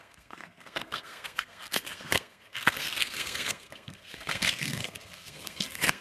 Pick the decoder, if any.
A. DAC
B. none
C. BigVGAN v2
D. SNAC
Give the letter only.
D